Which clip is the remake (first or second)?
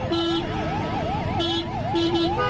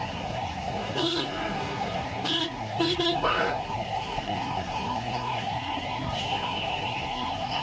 second